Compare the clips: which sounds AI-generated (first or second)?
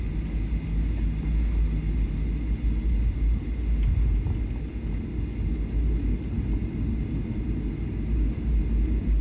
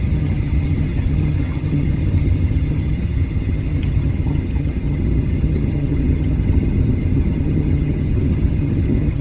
second